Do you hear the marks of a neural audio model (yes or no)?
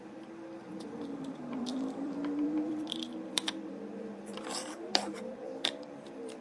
yes